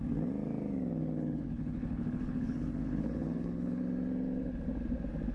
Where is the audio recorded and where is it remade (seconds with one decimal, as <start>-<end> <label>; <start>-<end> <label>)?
0.0-1.0 recorded; 1.0-3.8 remade; 3.8-5.3 recorded